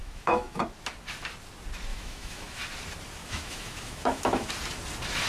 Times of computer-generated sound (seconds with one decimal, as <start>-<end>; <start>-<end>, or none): 0.0-0.6; 1.9-2.6; 3.2-4.5